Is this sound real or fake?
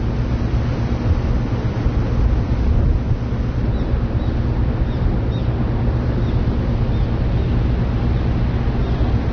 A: real